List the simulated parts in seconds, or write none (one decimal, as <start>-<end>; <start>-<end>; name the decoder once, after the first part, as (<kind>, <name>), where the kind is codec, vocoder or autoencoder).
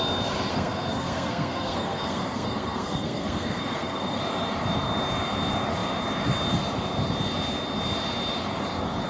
0.5-4.2 (codec, SNAC)